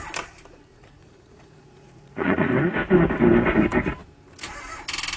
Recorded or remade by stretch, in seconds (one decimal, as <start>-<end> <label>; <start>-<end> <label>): 0.0-0.7 recorded; 0.7-2.5 remade; 2.5-5.2 recorded